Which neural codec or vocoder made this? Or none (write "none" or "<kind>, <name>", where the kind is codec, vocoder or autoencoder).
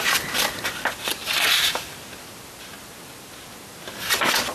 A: none